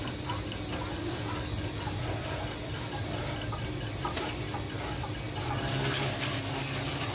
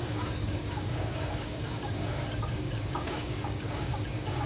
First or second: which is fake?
second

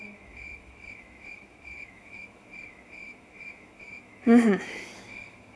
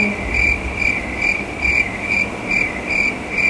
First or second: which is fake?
first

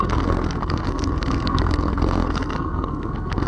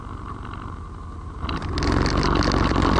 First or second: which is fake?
first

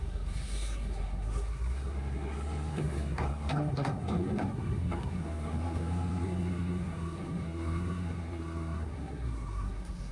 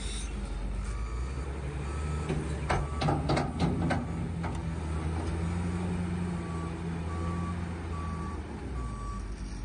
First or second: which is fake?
first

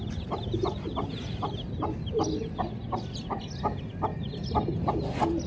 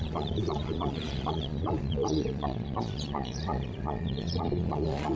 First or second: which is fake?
second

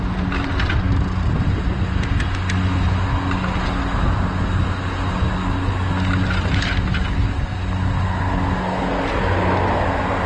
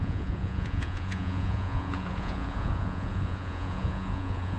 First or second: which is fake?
second